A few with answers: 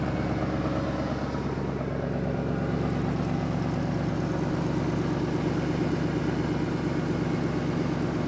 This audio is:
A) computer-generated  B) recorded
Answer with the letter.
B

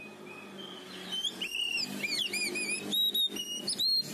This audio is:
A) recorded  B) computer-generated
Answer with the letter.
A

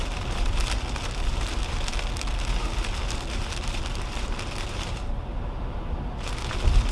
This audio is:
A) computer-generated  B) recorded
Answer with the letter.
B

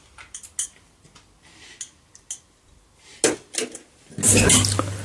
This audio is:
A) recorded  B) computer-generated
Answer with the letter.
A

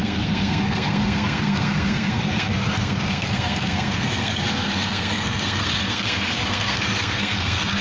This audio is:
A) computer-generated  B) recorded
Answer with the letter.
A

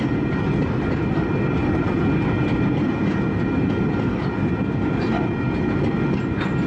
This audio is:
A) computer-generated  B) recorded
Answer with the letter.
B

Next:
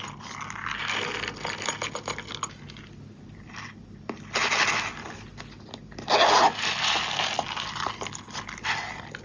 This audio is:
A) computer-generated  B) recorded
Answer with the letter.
B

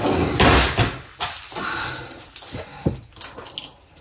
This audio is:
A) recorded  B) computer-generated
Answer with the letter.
A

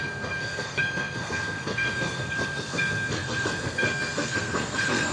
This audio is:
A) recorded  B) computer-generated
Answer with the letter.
B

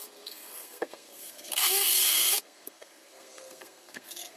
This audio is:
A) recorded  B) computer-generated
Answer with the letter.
B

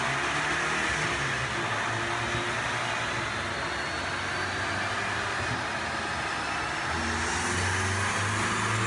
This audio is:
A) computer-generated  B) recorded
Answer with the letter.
B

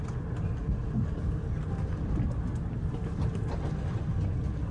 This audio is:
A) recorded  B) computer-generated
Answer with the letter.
A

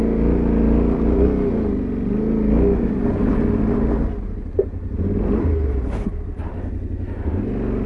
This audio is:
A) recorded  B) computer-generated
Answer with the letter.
A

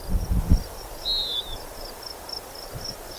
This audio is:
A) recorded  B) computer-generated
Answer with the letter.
A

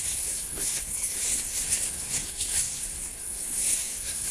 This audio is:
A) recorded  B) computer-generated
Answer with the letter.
B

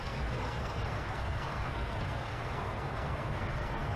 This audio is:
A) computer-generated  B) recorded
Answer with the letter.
A